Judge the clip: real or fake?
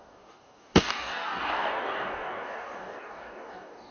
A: fake